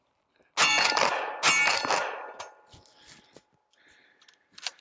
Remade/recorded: recorded